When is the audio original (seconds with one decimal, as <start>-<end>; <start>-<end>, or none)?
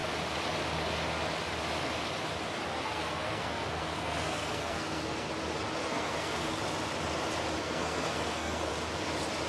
0.0-2.7; 5.3-5.8; 6.6-7.6; 8.7-9.5